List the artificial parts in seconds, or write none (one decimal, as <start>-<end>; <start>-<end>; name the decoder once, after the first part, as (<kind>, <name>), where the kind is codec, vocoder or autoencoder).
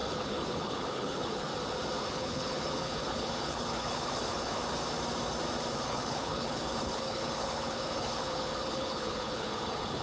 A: 0.0-1.5 (codec, HILCodec); 2.1-4.6; 5.7-10.0